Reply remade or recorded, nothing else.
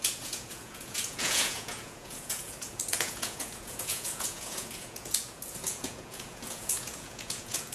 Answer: remade